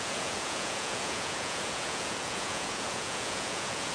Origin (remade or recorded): remade